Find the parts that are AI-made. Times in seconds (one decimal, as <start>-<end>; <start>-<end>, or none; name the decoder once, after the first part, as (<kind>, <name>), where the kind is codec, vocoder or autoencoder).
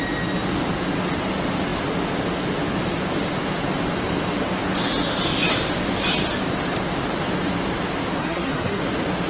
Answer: 8.2-8.8 (codec, SNAC)